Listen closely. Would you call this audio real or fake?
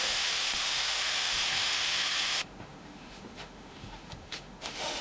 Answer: fake